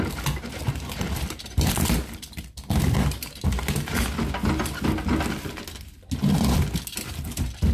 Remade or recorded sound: recorded